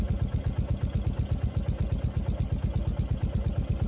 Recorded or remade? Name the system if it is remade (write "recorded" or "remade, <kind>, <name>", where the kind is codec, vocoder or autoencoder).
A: recorded